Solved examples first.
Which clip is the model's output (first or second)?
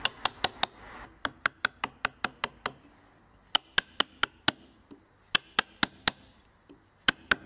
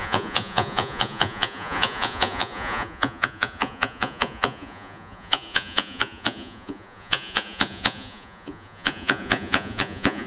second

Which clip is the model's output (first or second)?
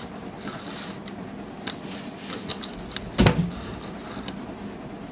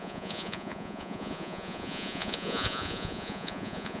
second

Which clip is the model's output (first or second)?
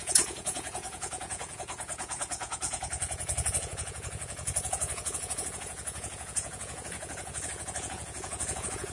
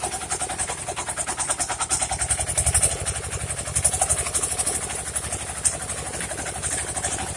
first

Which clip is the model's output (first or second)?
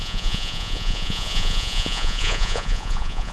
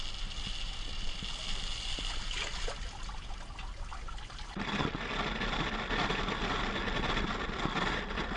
first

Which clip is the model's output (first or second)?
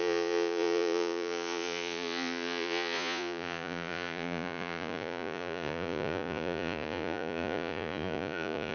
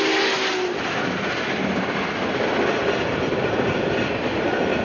first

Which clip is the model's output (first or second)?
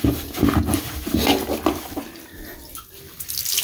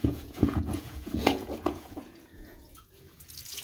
second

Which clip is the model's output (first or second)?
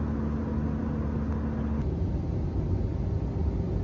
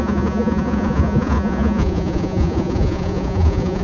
second